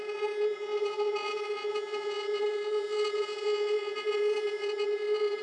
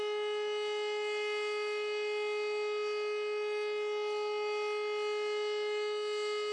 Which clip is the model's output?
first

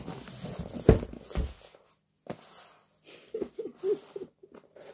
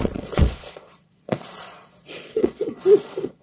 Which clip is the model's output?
second